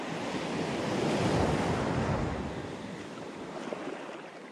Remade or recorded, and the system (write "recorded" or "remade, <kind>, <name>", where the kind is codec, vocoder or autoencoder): recorded